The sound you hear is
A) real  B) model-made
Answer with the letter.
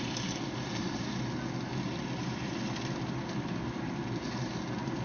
A